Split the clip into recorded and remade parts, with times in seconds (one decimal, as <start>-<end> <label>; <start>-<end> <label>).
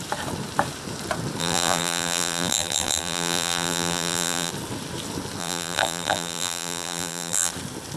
0.0-1.4 recorded; 1.4-4.5 remade; 4.5-5.4 recorded; 5.4-7.5 remade; 7.5-8.0 recorded